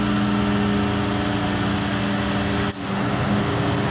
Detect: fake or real real